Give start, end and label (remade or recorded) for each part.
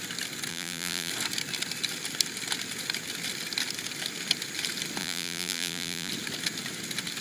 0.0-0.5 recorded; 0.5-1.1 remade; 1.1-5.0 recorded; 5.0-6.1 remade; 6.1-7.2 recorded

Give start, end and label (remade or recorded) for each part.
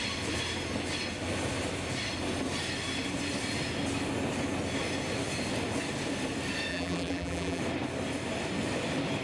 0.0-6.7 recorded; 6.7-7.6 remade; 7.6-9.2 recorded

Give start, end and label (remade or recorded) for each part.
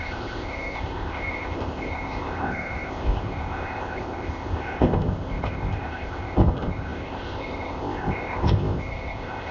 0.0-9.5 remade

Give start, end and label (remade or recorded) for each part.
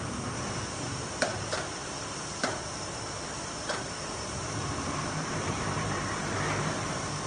0.0-7.3 remade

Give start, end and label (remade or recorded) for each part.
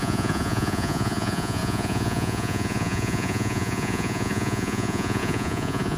0.0-6.0 remade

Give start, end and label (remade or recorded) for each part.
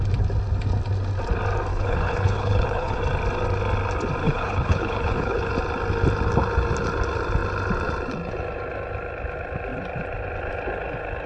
0.0-1.7 recorded; 1.7-3.0 remade; 3.0-4.2 recorded; 4.2-5.5 remade; 5.5-11.3 recorded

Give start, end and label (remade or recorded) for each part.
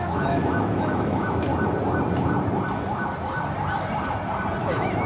0.0-1.5 remade; 1.5-4.6 recorded; 4.6-5.1 remade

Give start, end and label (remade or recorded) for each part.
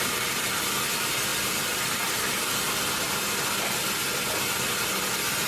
0.0-5.5 recorded